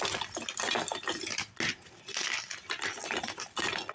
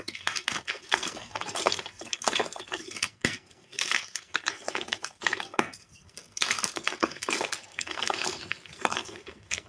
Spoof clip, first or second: second